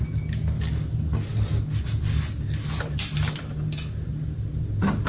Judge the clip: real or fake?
real